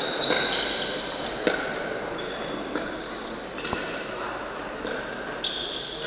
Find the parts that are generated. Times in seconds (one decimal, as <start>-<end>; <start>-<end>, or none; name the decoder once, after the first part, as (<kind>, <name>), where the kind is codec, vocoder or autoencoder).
none